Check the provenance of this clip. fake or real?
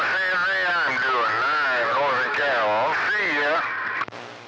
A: real